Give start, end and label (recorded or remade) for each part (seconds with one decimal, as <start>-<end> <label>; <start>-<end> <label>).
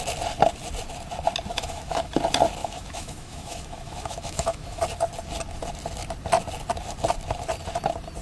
0.0-1.5 recorded; 1.5-2.1 remade; 2.1-2.6 recorded; 2.6-4.8 remade; 4.8-8.2 recorded